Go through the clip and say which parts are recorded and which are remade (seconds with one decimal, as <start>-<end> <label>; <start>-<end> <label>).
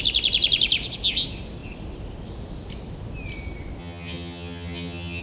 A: 0.0-3.8 recorded; 3.8-5.2 remade